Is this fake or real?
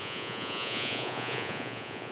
fake